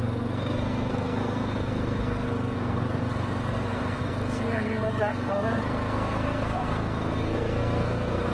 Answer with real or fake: fake